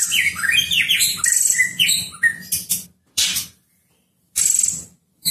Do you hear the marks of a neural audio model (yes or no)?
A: yes